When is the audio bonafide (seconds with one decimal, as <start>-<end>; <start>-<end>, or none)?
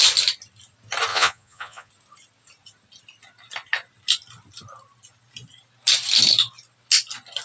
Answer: 0.0-1.1; 1.9-7.4